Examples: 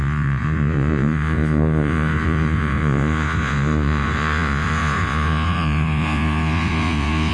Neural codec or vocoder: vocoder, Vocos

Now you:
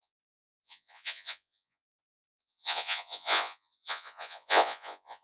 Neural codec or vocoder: vocoder, Vocos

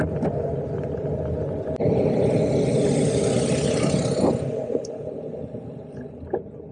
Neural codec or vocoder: none